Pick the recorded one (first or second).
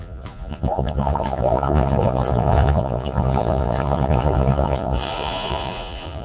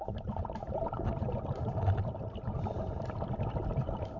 second